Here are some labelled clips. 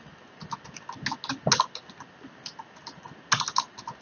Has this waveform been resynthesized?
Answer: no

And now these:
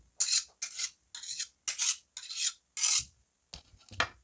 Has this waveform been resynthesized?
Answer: no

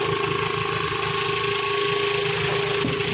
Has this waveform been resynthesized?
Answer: no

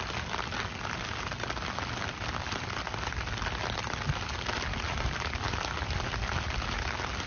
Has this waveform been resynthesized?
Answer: no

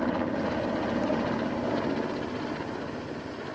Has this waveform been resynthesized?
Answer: no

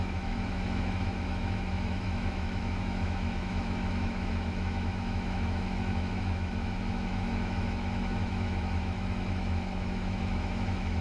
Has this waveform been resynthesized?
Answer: yes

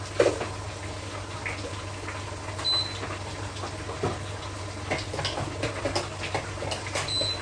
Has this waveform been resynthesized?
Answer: no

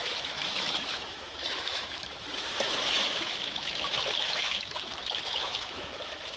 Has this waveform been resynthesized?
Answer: yes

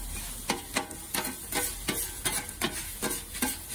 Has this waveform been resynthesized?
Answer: no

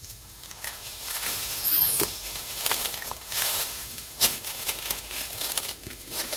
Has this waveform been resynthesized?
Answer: yes